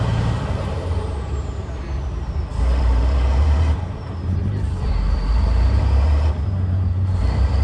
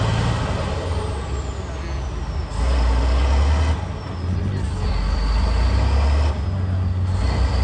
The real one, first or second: second